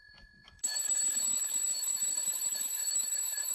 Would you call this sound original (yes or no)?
no